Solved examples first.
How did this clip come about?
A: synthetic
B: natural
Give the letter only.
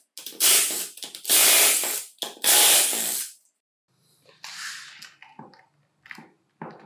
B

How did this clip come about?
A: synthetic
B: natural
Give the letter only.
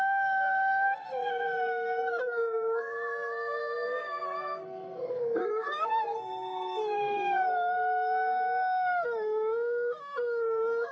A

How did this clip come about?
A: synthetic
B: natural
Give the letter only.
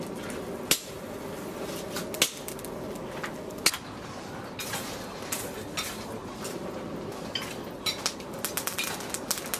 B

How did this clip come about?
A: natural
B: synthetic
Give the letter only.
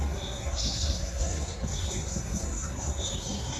B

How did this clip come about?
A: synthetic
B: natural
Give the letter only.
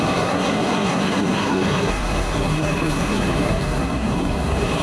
A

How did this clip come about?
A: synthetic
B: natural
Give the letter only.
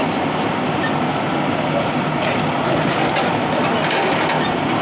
B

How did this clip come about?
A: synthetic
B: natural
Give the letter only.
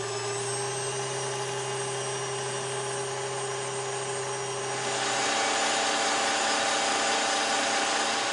B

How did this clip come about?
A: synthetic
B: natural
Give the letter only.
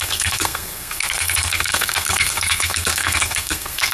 A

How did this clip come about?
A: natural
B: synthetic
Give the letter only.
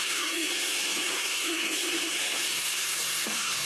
B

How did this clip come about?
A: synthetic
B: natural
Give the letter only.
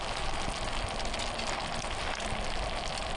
B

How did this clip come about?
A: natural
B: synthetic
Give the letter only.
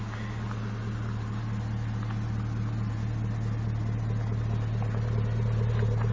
A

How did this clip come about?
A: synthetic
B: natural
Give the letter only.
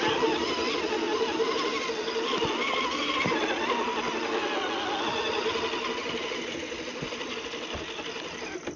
B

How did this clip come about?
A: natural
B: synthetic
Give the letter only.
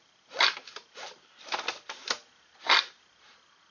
A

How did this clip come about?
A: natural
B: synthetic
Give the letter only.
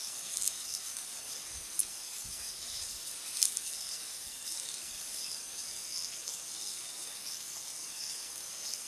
B